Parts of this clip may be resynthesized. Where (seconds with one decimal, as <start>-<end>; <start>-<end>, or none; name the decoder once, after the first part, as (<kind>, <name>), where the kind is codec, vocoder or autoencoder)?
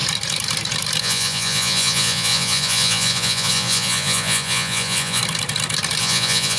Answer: 1.0-5.2 (vocoder, Vocos); 6.0-6.6